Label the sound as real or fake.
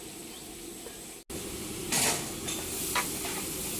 real